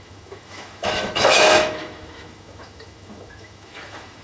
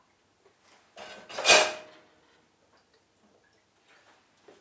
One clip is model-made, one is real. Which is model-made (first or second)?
first